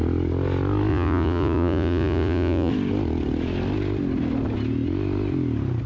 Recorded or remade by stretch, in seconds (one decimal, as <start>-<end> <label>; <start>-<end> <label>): 0.0-0.9 recorded; 0.9-2.7 remade; 2.7-5.9 recorded